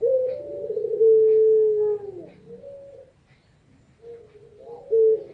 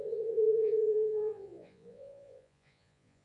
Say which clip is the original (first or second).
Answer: first